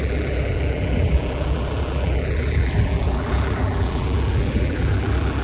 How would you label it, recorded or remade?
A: remade